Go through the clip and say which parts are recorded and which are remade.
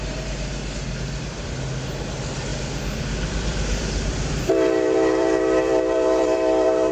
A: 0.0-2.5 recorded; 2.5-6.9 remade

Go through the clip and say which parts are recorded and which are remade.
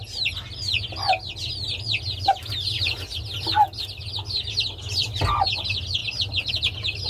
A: 0.0-7.1 recorded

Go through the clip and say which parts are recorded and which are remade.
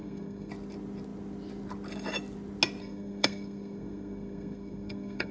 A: 0.0-0.5 remade; 0.5-2.8 recorded; 2.8-5.3 remade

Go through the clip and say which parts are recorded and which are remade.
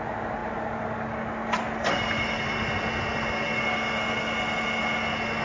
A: 0.0-0.4 recorded; 0.4-2.8 remade; 2.8-5.4 recorded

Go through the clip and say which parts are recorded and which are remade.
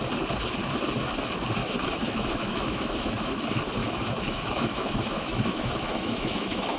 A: 0.0-1.6 recorded; 1.6-3.4 remade; 3.4-3.8 recorded; 3.8-6.8 remade